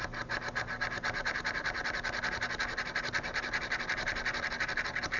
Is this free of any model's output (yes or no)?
yes